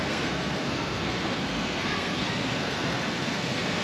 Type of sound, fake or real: fake